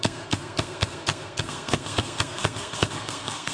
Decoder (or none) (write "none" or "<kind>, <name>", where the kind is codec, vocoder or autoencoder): codec, SNAC